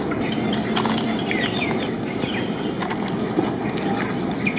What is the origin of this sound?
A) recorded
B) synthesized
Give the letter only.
A